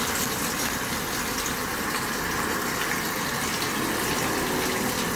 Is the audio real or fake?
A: real